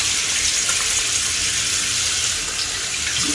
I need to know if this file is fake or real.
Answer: real